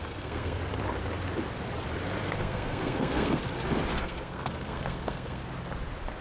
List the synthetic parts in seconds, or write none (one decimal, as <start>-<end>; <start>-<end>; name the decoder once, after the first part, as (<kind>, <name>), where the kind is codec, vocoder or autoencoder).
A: 0.0-0.6 (codec, SNAC); 2.2-3.4; 4.0-5.4